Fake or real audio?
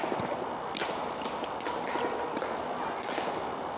real